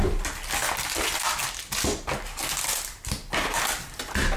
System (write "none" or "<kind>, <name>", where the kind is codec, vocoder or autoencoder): none